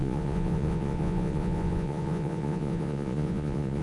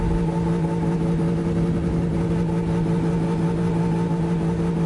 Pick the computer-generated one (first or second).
first